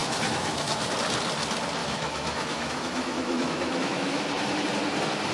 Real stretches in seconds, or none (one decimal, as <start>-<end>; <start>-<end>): 0.8-1.8; 4.2-5.3